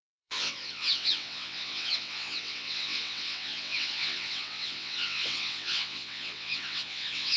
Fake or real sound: fake